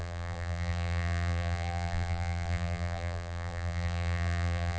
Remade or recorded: remade